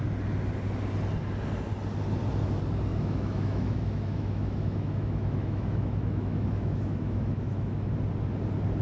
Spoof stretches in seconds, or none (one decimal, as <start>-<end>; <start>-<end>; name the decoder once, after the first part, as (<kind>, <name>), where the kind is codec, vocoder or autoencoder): 2.9-7.9 (autoencoder, DAC-VAE)